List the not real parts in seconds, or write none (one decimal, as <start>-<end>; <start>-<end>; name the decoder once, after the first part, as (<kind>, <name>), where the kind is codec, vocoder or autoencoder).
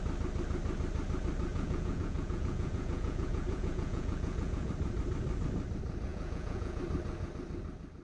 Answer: 1.5-4.7 (vocoder, Vocos); 6.1-6.8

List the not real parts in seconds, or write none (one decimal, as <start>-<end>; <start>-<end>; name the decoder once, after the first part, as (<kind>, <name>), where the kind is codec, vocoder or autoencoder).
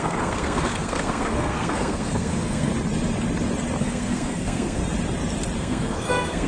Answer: 0.0-2.7 (codec, SNAC); 3.8-4.8; 5.6-6.5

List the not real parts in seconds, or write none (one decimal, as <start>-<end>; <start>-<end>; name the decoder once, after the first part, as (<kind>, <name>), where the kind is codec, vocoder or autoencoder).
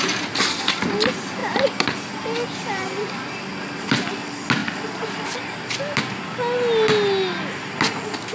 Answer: none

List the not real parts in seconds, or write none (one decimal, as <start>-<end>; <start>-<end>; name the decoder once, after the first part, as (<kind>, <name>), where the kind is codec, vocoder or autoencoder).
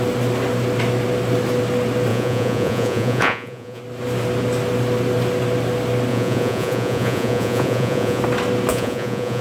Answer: 2.1-3.8 (vocoder, Vocos); 6.1-8.2; 8.7-9.4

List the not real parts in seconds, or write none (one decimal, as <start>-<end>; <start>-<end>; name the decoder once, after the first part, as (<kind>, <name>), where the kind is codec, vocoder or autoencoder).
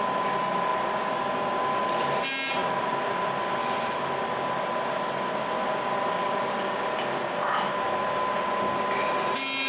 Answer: none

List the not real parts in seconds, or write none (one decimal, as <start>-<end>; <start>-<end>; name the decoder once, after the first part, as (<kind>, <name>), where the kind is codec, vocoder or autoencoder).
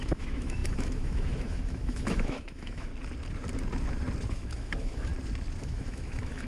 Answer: 0.0-2.9 (autoencoder, DAC-VAE); 4.3-5.1; 5.6-6.5